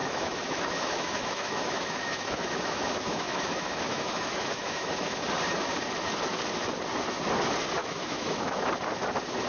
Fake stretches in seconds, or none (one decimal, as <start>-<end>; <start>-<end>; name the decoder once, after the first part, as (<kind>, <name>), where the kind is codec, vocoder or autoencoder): 0.0-5.2 (autoencoder, DAC-VAE); 7.8-8.7